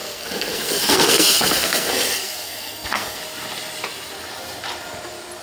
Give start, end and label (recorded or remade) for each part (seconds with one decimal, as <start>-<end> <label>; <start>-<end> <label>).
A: 0.0-3.2 remade; 3.2-5.4 recorded